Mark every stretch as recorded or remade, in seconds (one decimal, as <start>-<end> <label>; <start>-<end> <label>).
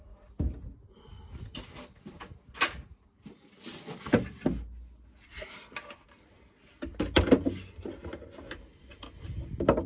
0.0-9.9 recorded